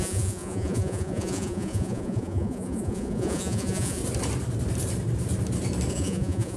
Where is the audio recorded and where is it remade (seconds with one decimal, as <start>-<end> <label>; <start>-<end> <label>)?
0.0-4.0 remade; 4.0-5.9 recorded; 5.9-6.6 remade